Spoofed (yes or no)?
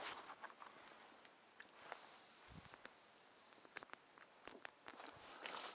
no